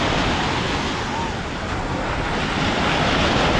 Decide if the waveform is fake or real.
real